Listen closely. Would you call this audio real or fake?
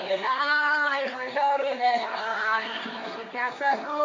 fake